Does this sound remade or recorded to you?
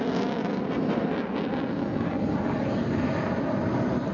recorded